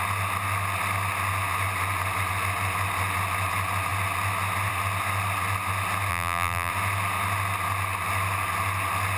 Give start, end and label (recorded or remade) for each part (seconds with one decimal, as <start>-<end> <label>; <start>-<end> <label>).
0.0-6.1 recorded; 6.1-6.7 remade; 6.7-9.2 recorded